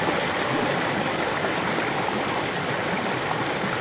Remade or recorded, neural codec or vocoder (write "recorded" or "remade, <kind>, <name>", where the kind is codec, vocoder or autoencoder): recorded